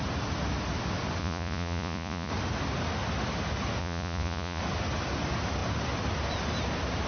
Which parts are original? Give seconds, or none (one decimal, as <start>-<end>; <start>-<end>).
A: 0.0-1.2; 2.3-3.8; 4.6-7.1

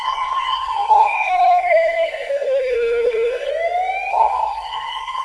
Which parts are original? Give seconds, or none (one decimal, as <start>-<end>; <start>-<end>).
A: 3.5-4.1

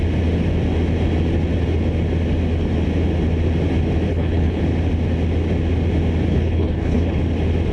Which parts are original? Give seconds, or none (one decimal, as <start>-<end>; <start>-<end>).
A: 0.0-4.1; 4.6-6.3; 7.2-7.7

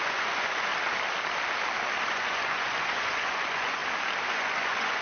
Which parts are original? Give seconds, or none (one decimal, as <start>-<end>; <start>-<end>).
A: 0.7-2.1; 3.8-4.3

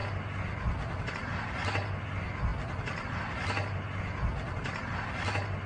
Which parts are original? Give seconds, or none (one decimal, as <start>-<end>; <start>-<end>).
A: 0.0-5.7

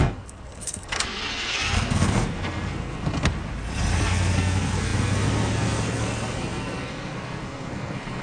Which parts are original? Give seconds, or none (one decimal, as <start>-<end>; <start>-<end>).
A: 3.3-4.0